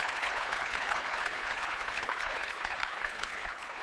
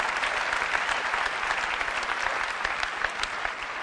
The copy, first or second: first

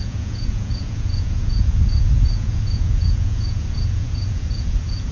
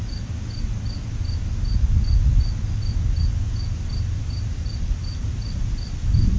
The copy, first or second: first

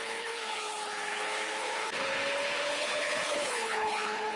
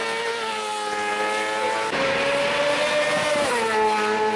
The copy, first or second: first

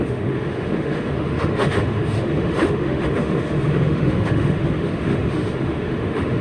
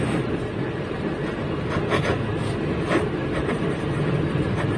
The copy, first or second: first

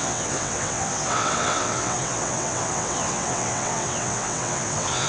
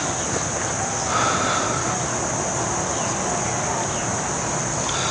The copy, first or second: first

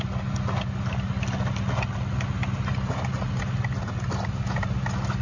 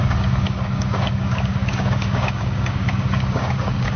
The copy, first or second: second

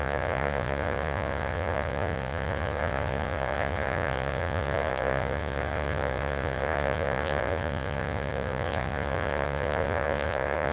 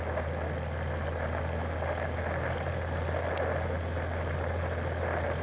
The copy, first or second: first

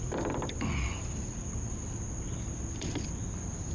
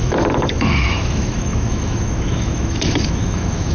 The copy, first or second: second